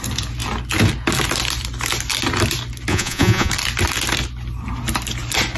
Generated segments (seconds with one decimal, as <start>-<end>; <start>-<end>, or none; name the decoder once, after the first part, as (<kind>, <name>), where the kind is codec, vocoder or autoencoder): 2.9-3.5 (vocoder, Vocos)